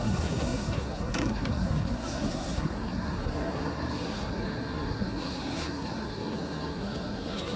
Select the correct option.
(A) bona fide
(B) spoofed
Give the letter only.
B